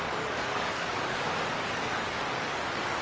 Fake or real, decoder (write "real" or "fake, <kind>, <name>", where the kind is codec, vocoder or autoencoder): fake, codec, DAC